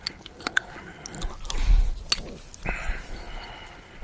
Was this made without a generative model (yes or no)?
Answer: yes